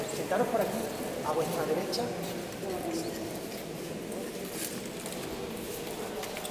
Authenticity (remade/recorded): recorded